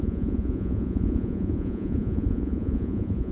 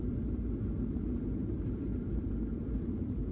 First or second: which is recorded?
second